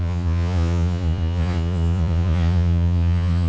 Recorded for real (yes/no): no